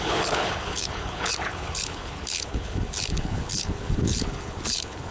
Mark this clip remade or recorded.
remade